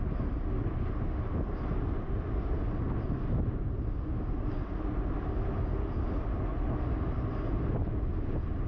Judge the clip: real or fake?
real